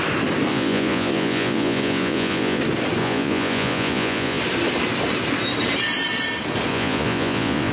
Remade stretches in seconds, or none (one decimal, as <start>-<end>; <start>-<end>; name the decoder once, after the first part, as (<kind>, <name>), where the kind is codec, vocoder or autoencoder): 0.5-2.6 (vocoder, Vocos); 3.0-4.4; 6.7-7.7